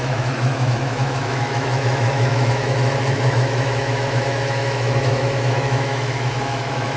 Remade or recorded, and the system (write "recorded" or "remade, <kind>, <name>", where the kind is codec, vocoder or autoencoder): remade, autoencoder, DAC-VAE